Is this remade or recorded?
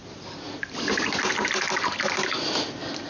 recorded